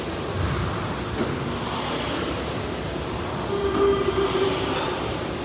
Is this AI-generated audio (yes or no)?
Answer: no